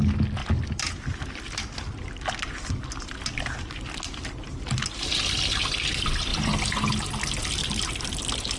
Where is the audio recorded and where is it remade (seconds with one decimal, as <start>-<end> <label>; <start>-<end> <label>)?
0.0-7.6 recorded; 7.6-8.1 remade; 8.1-8.6 recorded